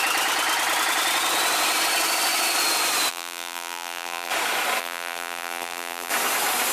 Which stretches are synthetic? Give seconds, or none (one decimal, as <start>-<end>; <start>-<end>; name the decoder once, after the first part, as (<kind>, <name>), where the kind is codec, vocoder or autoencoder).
3.1-4.3 (vocoder, BigVGAN v2); 4.8-6.1